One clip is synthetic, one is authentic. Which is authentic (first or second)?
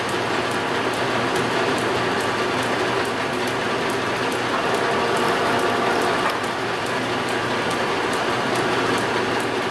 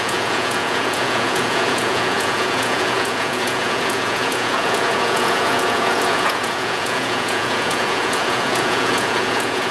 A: first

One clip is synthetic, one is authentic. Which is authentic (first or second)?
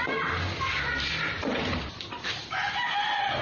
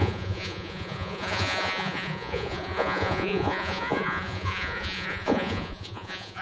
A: first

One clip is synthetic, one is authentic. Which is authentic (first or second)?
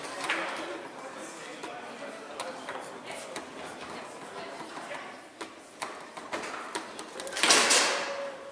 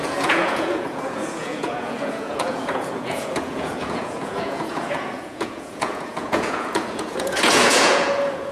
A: first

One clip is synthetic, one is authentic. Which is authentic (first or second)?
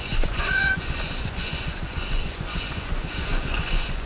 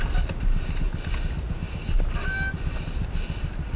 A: second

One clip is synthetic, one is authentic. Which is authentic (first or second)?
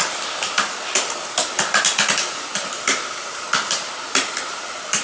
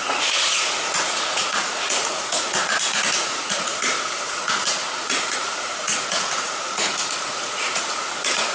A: first